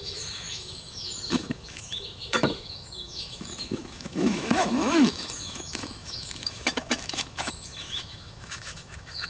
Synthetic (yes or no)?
yes